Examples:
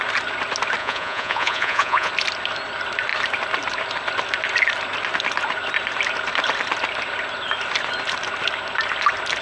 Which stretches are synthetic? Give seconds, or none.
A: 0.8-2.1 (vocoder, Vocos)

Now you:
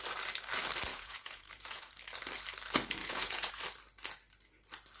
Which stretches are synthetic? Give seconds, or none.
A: 0.9-1.9 (vocoder, Vocos); 3.0-3.5